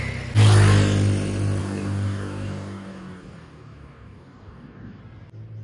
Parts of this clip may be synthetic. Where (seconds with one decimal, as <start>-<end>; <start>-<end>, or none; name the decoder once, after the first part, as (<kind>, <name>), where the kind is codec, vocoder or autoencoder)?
1.6-5.0 (codec, DAC)